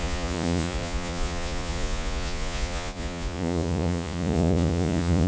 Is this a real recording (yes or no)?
no